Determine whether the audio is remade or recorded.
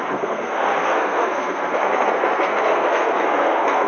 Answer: remade